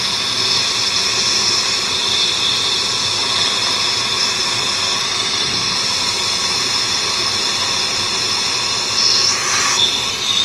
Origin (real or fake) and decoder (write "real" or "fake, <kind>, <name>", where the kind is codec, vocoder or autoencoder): real